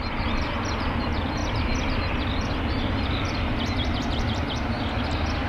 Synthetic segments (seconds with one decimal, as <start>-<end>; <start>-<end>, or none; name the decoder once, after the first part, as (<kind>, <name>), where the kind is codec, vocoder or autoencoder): none